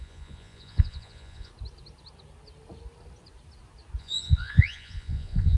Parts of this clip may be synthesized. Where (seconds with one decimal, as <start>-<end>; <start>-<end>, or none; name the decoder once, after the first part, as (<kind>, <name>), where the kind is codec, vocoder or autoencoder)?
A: 0.0-1.5 (vocoder, Vocos); 4.0-5.6